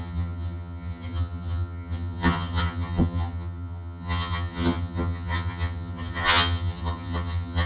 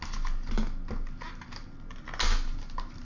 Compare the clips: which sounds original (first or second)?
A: second